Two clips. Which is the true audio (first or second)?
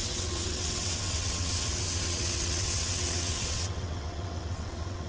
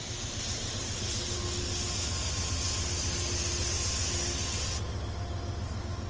second